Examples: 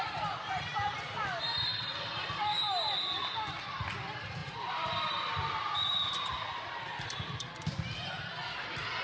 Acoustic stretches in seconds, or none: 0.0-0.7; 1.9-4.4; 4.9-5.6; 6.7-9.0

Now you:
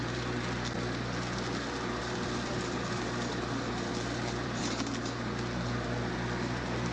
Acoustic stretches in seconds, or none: 0.0-2.0; 4.6-6.9

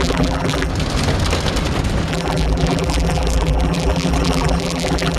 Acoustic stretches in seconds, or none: 0.7-2.1

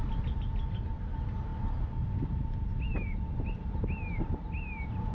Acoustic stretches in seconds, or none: 0.0-5.1

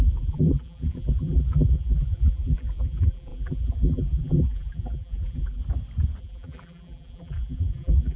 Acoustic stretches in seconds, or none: 5.6-6.2

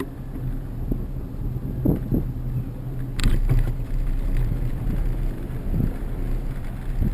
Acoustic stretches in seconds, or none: 0.0-3.2; 3.7-7.1

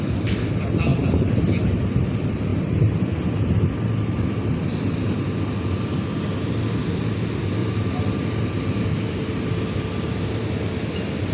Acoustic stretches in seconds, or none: 0.0-0.9; 1.4-2.5; 3.0-7.6; 9.3-11.3

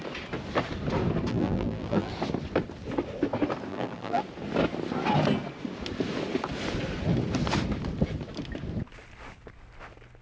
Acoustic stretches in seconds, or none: 0.0-1.3; 2.1-3.7; 4.2-10.2